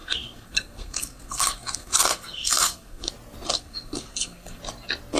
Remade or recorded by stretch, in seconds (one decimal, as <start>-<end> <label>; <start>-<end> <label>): 0.0-3.1 remade; 3.1-3.5 recorded; 3.5-4.6 remade; 4.6-5.2 recorded